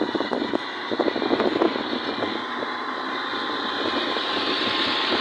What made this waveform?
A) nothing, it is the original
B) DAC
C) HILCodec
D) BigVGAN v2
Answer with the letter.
A